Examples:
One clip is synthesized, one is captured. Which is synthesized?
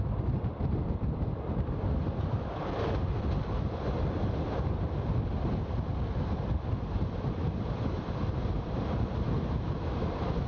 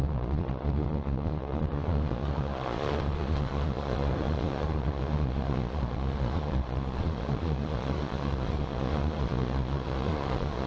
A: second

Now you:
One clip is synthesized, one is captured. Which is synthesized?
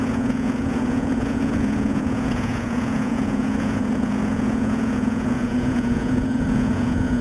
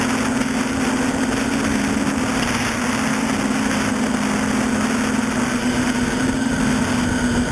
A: first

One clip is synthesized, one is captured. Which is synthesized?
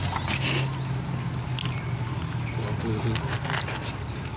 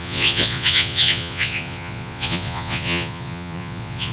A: second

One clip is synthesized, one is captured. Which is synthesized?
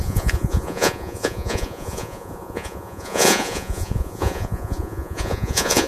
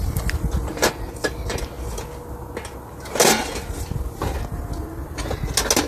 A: first